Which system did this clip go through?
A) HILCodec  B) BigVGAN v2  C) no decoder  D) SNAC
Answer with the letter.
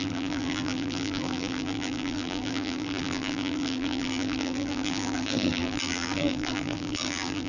B